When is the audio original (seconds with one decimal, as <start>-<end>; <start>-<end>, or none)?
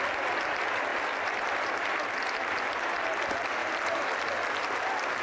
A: 0.0-5.2